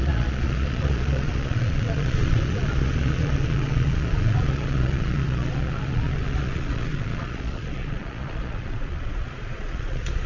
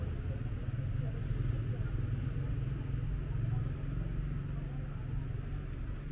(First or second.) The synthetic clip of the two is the first